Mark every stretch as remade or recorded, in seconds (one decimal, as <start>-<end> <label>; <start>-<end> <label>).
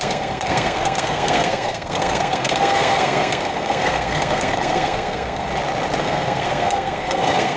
0.0-5.5 remade; 5.5-6.0 recorded; 6.0-7.6 remade